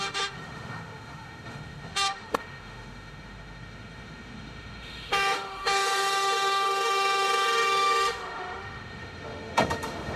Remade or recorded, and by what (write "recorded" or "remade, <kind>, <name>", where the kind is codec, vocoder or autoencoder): remade, autoencoder, DAC-VAE